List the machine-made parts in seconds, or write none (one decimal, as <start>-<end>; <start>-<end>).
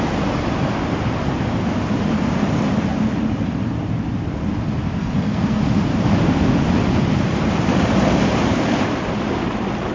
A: 5.0-5.6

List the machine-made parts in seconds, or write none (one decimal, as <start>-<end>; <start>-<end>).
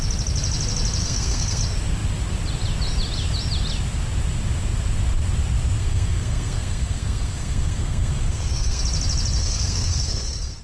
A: 1.0-1.6; 5.8-8.8; 9.4-10.6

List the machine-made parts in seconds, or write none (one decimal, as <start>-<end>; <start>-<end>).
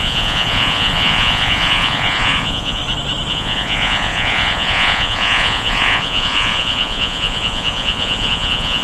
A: 0.0-2.8; 3.3-8.8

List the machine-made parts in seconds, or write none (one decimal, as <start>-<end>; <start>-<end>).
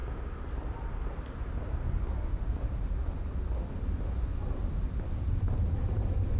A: none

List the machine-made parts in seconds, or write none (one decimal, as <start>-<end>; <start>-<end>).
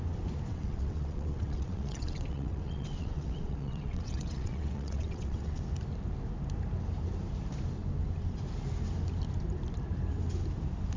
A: 0.5-5.6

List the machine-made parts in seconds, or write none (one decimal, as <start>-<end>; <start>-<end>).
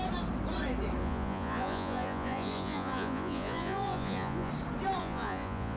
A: 1.0-4.5; 5.0-5.8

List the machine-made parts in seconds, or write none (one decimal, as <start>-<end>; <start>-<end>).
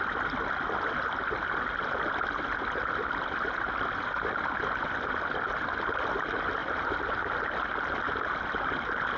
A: 6.6-7.2